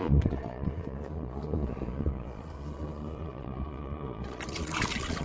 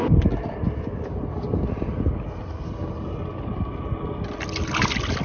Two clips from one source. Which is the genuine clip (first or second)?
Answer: second